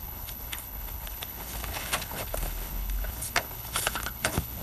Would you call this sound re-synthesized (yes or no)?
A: yes